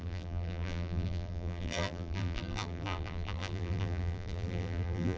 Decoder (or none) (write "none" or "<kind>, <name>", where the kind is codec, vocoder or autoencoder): vocoder, BigVGAN v2